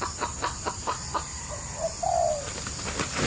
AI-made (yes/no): no